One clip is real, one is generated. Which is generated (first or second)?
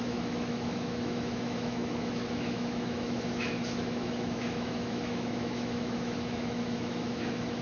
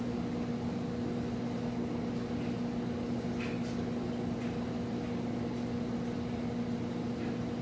first